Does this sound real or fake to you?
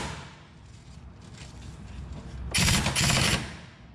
real